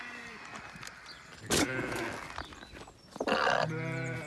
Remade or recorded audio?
recorded